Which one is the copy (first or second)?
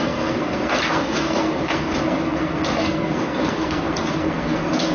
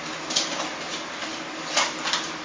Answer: first